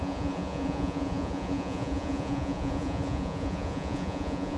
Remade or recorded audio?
remade